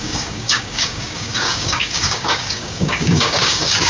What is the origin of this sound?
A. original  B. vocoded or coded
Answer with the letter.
B